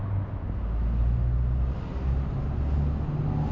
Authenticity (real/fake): real